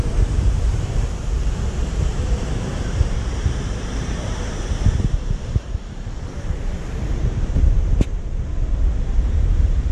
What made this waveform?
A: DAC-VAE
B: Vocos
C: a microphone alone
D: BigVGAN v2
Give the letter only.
D